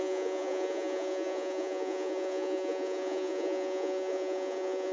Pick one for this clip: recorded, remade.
remade